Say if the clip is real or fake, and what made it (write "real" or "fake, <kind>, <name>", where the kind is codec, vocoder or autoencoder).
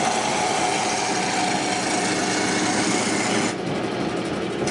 real